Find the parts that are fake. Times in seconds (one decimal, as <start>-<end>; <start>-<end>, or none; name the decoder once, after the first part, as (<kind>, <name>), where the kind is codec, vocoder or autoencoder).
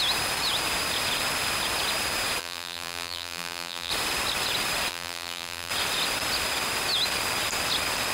2.4-3.9 (vocoder, BigVGAN v2); 4.9-5.7